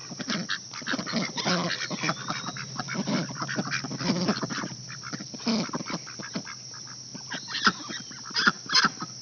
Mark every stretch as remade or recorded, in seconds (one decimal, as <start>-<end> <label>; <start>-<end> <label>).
0.0-7.1 recorded; 7.1-8.1 remade; 8.1-9.2 recorded